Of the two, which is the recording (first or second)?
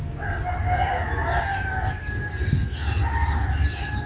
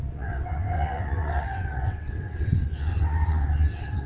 first